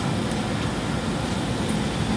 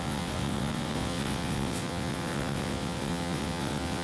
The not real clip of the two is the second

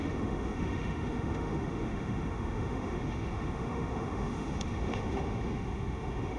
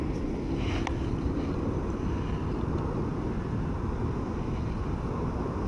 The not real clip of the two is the first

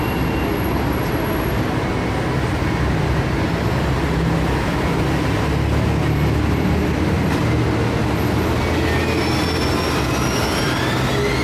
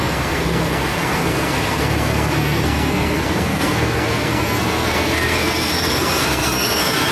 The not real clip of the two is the second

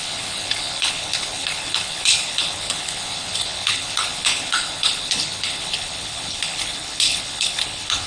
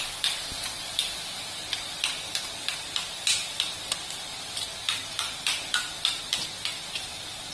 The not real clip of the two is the first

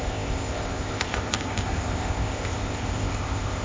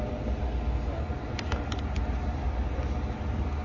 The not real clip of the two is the first